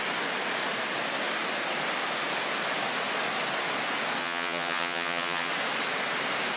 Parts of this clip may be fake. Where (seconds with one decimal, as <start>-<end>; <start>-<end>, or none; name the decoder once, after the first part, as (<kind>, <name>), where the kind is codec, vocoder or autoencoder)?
4.2-5.5 (vocoder, HiFi-GAN)